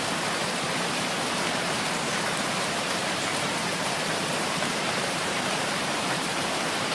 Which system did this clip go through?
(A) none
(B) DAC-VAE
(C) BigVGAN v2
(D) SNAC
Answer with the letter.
C